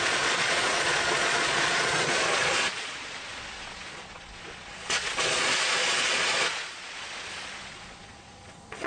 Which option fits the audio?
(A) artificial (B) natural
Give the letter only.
A